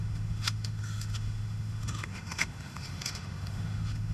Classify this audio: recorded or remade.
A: remade